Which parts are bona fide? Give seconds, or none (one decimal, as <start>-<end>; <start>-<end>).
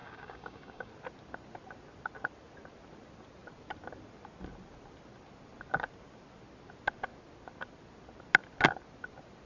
0.9-9.5